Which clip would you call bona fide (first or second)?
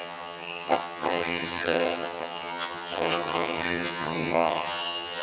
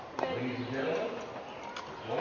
second